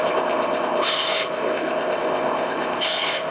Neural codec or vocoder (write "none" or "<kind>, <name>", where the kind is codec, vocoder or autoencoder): codec, ZipCodec